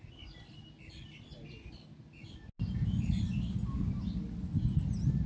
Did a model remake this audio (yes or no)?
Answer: no